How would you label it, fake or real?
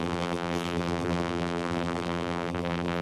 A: fake